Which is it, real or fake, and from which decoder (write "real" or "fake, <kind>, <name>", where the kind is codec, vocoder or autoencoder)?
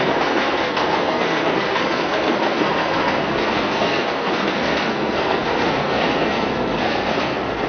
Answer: fake, codec, SNAC